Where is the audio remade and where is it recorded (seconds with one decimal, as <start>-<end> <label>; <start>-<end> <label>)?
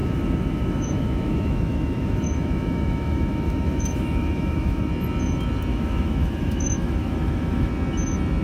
0.0-4.9 remade; 4.9-5.7 recorded; 5.7-7.7 remade; 7.7-8.4 recorded